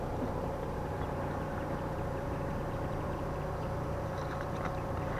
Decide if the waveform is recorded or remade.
remade